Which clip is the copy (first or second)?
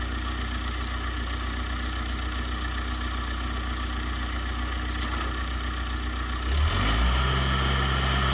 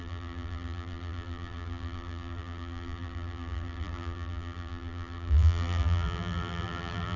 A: second